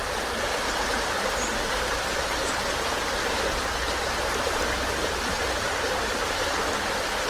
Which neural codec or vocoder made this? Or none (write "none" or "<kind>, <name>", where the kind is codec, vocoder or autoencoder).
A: vocoder, BigVGAN v2